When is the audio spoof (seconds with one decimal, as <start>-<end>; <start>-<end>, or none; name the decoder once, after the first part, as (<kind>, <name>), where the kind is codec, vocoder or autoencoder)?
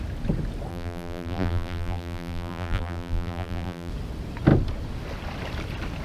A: 0.7-3.9 (vocoder, BigVGAN v2)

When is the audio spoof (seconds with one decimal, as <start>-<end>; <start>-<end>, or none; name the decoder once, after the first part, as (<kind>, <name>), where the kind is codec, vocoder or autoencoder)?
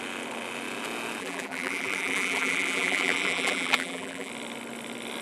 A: 1.2-4.3 (vocoder, BigVGAN v2)